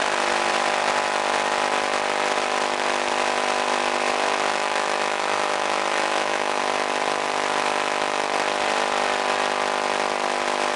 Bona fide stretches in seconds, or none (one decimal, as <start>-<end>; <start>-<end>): 0.0-4.5; 6.6-10.8